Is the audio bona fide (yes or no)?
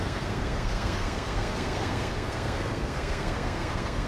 no